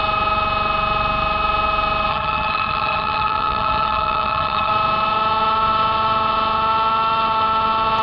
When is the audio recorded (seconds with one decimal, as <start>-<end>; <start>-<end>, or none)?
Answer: 0.0-2.1; 4.7-8.0